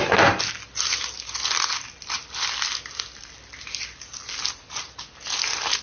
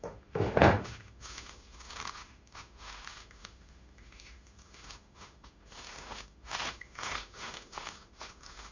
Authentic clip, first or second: first